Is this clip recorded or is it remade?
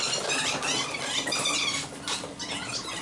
recorded